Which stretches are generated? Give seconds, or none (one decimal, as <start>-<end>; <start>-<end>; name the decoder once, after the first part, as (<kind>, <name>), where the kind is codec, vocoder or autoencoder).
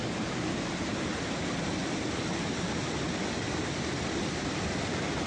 none